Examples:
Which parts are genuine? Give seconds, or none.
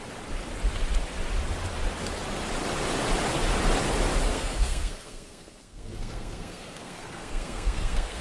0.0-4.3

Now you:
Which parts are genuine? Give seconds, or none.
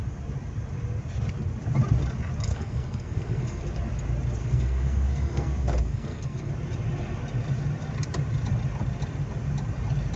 0.0-2.5; 3.6-4.4; 6.5-10.2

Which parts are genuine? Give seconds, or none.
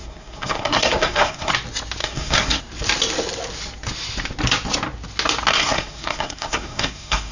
1.5-2.0; 2.6-5.5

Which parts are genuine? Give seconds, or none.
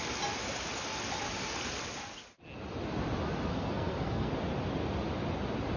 0.0-3.5; 4.3-5.8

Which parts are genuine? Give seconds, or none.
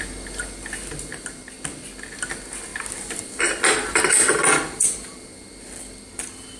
0.0-6.6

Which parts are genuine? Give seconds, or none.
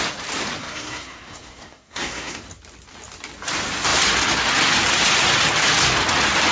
0.0-0.6; 2.4-6.5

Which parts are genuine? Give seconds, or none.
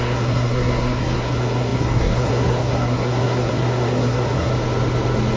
4.5-5.4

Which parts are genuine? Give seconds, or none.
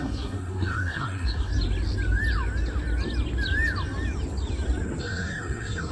1.5-5.0